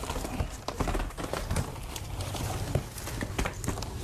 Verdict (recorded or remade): recorded